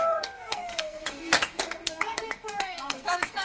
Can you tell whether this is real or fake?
fake